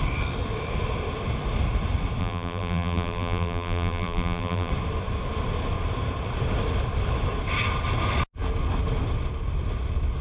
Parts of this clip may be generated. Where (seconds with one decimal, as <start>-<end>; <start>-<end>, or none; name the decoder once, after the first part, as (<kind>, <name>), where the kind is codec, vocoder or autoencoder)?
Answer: 2.2-4.7 (vocoder, BigVGAN v2)

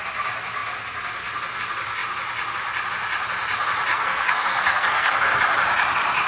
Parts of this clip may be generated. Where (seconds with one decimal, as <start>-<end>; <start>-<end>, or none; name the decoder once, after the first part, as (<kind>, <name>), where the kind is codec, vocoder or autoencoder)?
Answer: 3.9-5.4 (codec, SNAC)

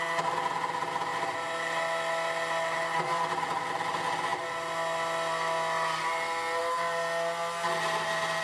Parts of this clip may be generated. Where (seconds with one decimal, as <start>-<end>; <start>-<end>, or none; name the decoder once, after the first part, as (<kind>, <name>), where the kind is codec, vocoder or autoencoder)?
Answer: none

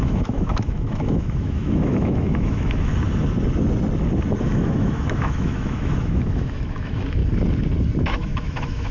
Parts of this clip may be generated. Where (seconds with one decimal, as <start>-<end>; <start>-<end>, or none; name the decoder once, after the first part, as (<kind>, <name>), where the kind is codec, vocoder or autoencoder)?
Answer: 0.0-2.9 (autoencoder, DAC-VAE); 4.4-7.2; 8.0-8.9

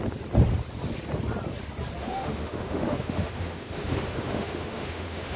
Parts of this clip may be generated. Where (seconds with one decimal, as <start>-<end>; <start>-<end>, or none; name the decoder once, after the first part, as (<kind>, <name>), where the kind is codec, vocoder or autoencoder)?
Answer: 2.0-5.4 (autoencoder, DAC-VAE)